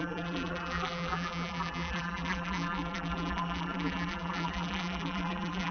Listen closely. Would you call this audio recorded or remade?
remade